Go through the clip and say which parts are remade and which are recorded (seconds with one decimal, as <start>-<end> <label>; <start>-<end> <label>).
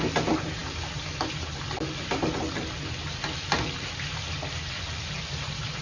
0.0-5.8 recorded